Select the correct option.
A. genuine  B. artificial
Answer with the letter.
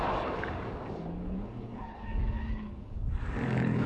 B